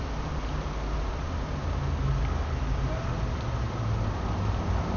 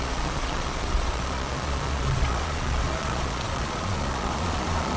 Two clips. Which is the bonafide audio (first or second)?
first